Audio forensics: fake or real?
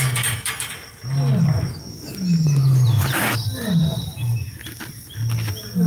real